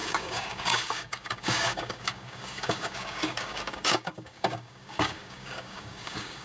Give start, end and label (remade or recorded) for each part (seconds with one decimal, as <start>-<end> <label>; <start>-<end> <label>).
0.0-6.4 remade

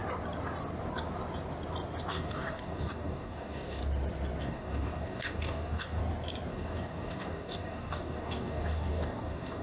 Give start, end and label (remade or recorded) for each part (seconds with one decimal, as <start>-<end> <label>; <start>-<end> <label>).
0.0-2.1 recorded; 2.1-3.8 remade; 3.8-4.4 recorded; 4.4-6.0 remade; 6.0-6.5 recorded; 6.5-9.6 remade

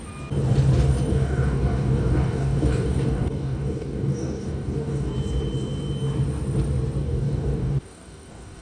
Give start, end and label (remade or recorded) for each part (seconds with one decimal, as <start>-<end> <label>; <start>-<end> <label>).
0.0-1.1 recorded; 1.1-5.1 remade; 5.1-7.0 recorded; 7.0-8.6 remade